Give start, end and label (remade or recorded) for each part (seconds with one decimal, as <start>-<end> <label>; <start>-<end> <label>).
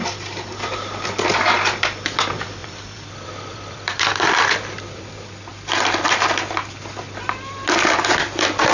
0.0-2.6 recorded; 2.6-5.1 remade; 5.1-8.7 recorded